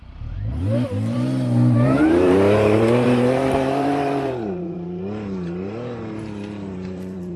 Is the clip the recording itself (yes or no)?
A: no